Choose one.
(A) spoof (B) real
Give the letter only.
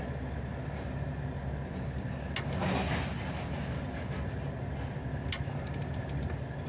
B